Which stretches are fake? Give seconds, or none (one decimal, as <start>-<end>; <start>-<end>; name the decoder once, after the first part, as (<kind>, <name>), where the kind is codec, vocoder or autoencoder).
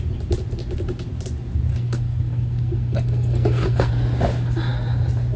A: 1.7-3.9 (codec, SNAC)